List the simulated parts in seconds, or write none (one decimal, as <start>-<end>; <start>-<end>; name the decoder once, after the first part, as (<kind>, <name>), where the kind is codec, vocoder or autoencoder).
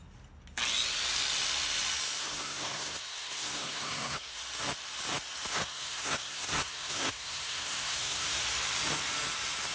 2.2-4.4 (codec, SNAC); 5.5-8.4